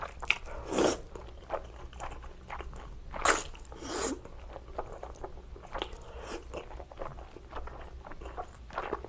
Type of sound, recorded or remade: recorded